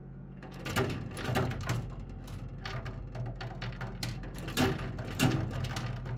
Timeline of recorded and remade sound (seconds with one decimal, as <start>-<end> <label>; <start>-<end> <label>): 0.0-0.6 remade; 0.6-6.2 recorded